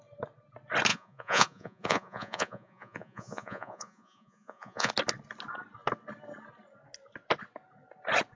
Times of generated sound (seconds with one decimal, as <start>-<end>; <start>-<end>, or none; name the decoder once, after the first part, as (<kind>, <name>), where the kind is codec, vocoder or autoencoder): 0.9-4.9 (vocoder, Vocos)